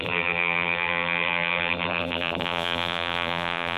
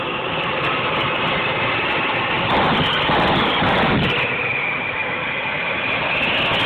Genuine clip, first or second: second